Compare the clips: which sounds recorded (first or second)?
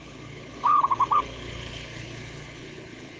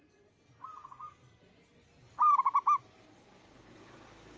second